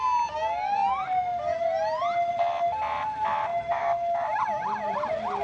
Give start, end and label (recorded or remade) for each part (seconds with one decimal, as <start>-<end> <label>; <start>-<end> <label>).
0.0-3.5 recorded; 3.5-4.4 remade; 4.4-5.4 recorded